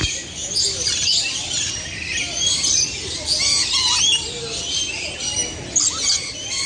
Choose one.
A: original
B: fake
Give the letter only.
A